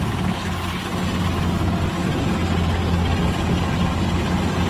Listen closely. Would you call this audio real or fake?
real